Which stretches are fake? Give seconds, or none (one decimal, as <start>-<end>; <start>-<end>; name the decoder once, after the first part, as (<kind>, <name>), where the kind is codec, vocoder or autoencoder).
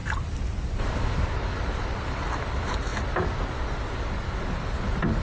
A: none